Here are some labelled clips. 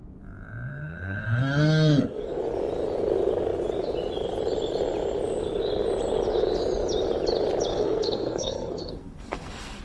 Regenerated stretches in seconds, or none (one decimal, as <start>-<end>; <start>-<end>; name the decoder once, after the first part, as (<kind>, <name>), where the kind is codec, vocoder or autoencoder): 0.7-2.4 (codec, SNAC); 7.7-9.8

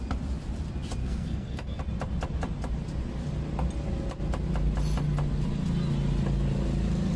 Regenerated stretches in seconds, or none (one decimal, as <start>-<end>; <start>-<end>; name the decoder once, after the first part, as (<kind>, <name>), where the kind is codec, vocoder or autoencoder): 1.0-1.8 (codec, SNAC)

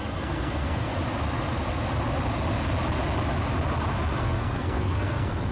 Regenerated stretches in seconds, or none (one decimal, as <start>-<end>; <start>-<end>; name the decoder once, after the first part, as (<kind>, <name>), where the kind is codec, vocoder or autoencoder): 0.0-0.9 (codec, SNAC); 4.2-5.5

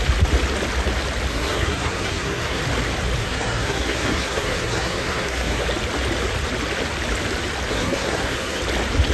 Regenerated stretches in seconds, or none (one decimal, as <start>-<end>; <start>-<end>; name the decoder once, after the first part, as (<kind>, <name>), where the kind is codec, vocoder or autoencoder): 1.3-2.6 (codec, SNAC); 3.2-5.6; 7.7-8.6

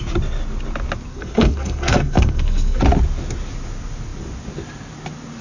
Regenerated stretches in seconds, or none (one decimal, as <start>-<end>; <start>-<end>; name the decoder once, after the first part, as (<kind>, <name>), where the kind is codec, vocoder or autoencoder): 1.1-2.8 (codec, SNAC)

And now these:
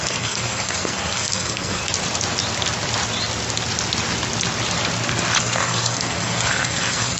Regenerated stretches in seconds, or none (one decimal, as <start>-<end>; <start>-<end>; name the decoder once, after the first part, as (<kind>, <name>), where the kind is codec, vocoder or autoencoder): 0.0-1.8 (codec, SNAC); 5.4-7.2

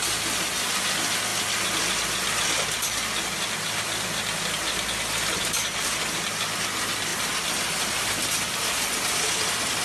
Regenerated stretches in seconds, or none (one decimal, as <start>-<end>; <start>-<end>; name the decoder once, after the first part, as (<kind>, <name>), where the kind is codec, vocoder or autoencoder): none